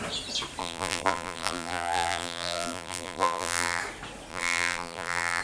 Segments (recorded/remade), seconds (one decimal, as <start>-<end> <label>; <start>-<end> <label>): 0.0-0.6 recorded; 0.6-3.8 remade; 3.8-4.3 recorded; 4.3-5.4 remade

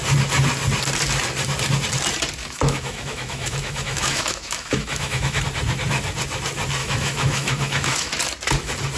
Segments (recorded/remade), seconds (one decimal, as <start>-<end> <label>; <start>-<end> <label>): 0.0-2.4 recorded; 2.4-5.4 remade; 5.4-6.8 recorded; 6.8-8.1 remade; 8.1-9.0 recorded